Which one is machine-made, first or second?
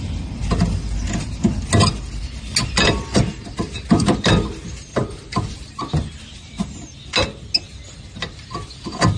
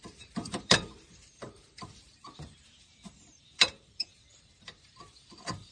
second